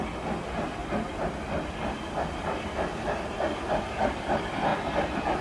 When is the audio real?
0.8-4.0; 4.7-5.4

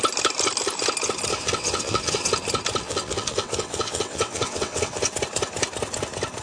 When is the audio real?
0.0-1.3; 2.3-2.8; 5.1-6.4

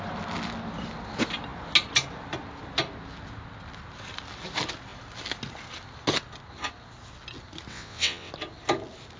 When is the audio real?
0.0-7.7; 8.3-9.2

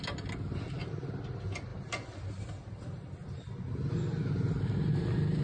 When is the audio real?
0.0-5.4

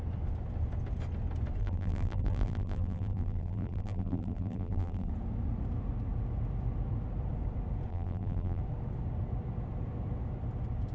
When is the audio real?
0.0-1.6; 5.1-7.9; 8.6-10.9

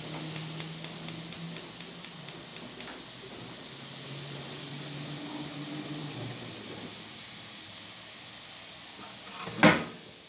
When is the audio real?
0.0-10.3

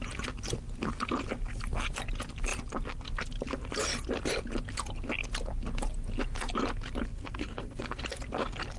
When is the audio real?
0.0-7.1; 8.0-8.8

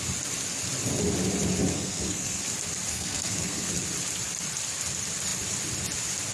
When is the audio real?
0.0-1.7; 2.4-2.9; 3.7-6.3